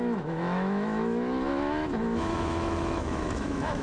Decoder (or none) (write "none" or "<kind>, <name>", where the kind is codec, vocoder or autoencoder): autoencoder, DAC-VAE